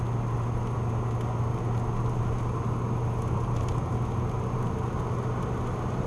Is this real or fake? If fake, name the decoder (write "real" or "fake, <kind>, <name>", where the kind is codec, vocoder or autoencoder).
real